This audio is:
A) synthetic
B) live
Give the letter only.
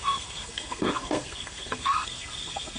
A